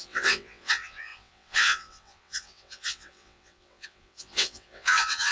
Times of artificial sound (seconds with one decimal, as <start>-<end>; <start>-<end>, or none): 0.0-5.3